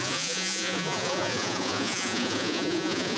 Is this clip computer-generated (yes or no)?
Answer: yes